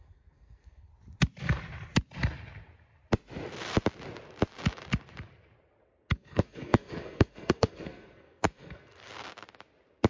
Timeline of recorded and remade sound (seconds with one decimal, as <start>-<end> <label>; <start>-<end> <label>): 0.0-0.9 remade; 0.9-6.1 recorded; 6.1-9.1 remade; 9.1-10.1 recorded

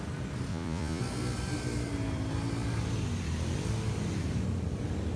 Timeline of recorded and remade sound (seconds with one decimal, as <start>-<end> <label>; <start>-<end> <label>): 0.0-0.5 recorded; 0.5-1.0 remade; 1.0-5.2 recorded